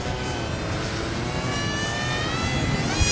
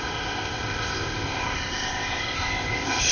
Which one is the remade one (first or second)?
second